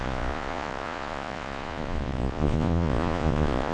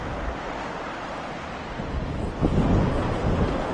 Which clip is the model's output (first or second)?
first